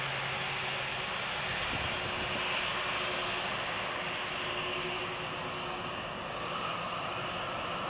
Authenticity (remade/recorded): recorded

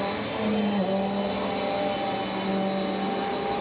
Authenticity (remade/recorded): recorded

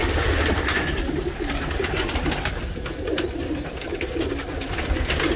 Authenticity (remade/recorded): recorded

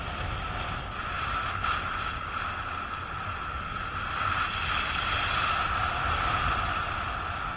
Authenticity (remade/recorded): recorded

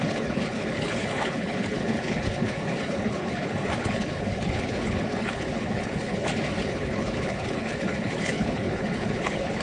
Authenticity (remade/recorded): remade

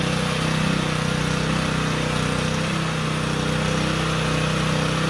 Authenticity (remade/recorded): recorded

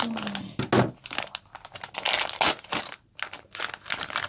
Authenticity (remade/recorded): recorded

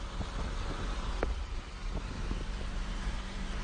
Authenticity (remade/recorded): recorded